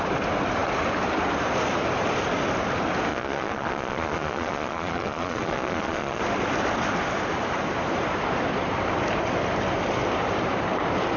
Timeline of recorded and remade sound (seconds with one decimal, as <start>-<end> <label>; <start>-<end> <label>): 0.0-3.1 recorded; 3.1-6.2 remade; 6.2-11.2 recorded